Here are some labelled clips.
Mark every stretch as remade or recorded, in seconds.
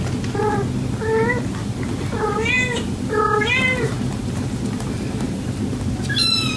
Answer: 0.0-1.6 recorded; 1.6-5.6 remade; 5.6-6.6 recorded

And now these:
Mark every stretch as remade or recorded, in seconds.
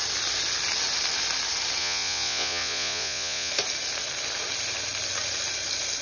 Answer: 0.0-1.8 recorded; 1.8-3.5 remade; 3.5-6.0 recorded